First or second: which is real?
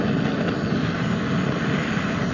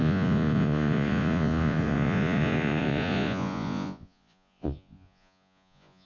first